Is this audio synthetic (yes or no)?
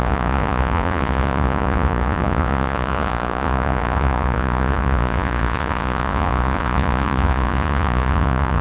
yes